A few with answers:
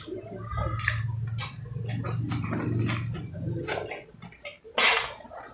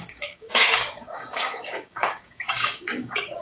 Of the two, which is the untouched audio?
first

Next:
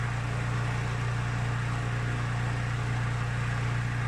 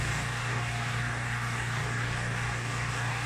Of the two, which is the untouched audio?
first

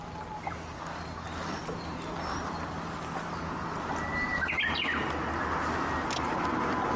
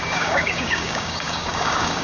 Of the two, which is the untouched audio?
first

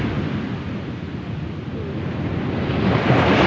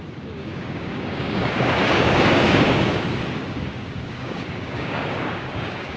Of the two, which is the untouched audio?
first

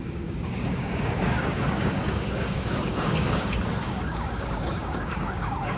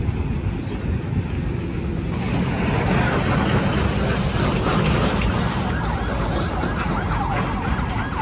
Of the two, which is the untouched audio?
second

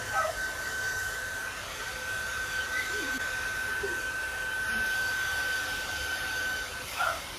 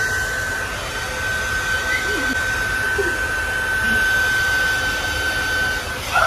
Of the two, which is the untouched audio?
second